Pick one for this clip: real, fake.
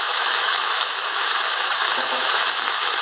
fake